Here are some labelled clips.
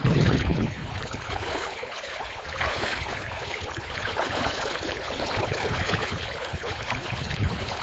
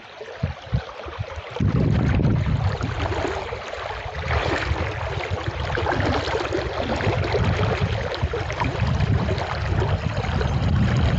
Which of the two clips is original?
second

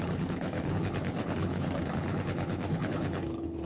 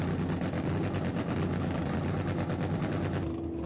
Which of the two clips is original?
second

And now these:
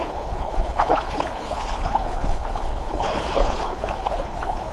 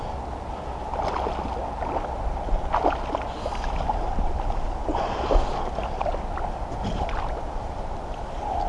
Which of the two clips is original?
second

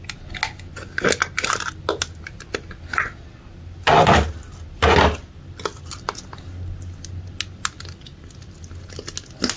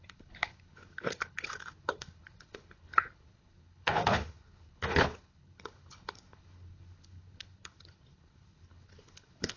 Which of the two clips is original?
first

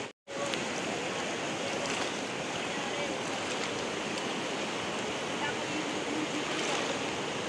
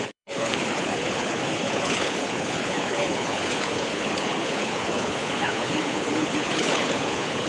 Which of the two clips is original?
first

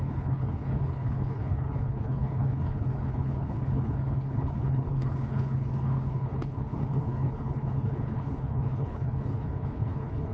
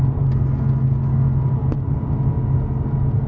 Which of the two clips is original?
second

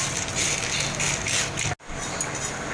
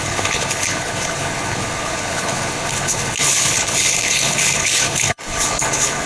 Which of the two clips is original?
first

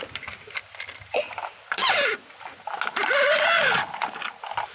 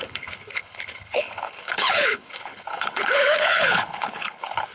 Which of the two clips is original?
first